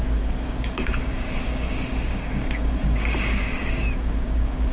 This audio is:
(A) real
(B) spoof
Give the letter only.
B